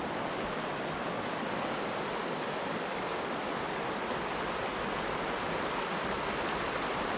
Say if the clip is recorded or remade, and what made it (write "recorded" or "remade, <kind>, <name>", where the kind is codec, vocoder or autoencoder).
recorded